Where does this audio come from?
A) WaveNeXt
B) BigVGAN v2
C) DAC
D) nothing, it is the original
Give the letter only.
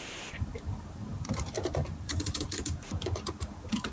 B